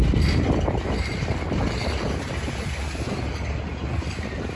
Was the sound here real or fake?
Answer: real